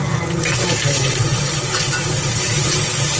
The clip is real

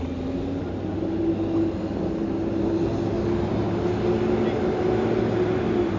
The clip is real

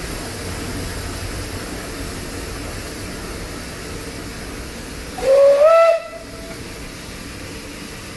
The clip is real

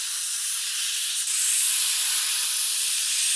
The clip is real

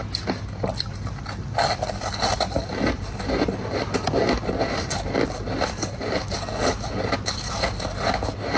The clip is real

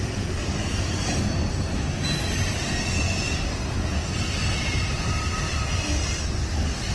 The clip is real